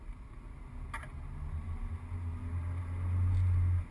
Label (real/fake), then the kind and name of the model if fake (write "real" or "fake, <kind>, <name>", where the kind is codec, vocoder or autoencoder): real